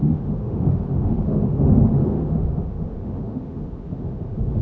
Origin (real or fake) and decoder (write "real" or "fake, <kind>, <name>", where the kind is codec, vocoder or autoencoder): fake, autoencoder, DAC-VAE